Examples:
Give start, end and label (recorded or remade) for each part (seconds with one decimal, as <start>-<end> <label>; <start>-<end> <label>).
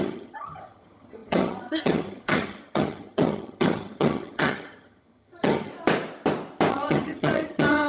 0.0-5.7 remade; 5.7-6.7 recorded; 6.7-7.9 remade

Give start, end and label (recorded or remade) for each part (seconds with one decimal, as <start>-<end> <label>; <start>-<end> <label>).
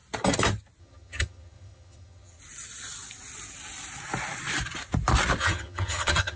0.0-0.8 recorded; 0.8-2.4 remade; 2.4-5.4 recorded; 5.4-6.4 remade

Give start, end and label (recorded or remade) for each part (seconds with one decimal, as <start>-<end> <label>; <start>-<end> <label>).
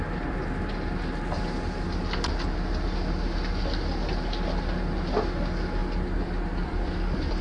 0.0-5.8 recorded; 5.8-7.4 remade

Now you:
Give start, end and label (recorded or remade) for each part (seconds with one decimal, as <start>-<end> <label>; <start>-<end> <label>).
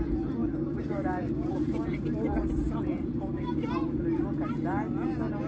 0.0-0.4 recorded; 0.4-3.7 remade; 3.7-5.5 recorded